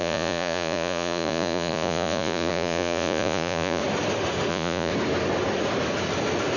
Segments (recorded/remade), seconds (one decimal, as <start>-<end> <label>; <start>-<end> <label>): 0.0-3.8 remade; 3.8-4.5 recorded; 4.5-4.9 remade; 4.9-6.6 recorded